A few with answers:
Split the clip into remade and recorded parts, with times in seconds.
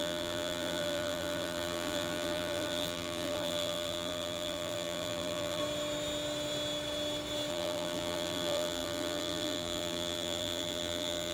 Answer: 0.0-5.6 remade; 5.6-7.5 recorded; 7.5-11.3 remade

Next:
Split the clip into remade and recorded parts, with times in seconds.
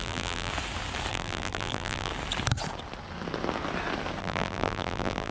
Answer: 0.0-0.5 remade; 0.5-1.1 recorded; 1.1-2.1 remade; 2.1-4.2 recorded; 4.2-5.3 remade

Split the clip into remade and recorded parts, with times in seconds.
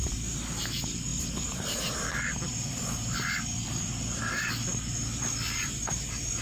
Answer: 0.0-1.1 recorded; 1.1-4.9 remade; 4.9-6.4 recorded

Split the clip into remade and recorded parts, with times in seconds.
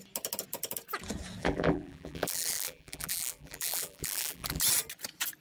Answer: 0.0-1.4 recorded; 1.4-4.6 remade; 4.6-5.4 recorded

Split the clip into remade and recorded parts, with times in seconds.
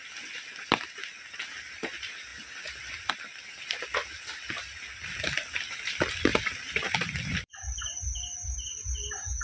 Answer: 0.0-6.3 recorded; 6.3-8.0 remade; 8.0-9.4 recorded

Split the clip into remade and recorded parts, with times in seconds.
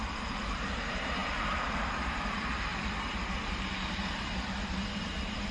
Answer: 0.0-5.5 remade